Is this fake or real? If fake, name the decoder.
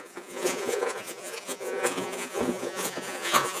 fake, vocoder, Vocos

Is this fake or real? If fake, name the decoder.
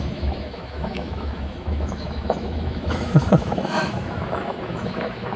fake, autoencoder, DAC-VAE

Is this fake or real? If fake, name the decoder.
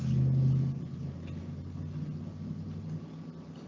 real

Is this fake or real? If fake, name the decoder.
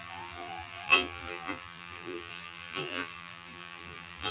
fake, vocoder, BigVGAN v2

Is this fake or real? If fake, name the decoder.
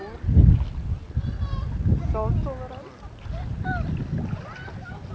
real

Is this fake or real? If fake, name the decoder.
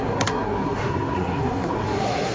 fake, codec, SNAC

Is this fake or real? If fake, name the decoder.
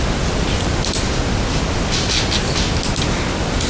real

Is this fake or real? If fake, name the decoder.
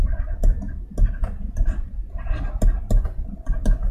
real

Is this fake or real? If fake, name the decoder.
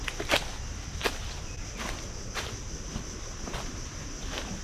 real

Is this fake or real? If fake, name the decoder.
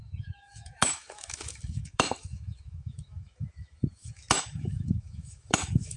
fake, autoencoder, DAC-VAE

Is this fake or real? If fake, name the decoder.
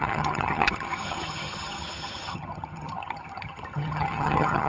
fake, vocoder, HiFi-GAN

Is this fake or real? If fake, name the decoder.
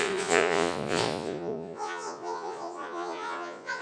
fake, vocoder, Vocos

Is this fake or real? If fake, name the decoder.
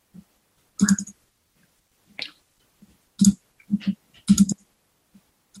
real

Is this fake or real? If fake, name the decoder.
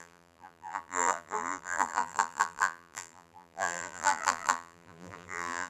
fake, vocoder, BigVGAN v2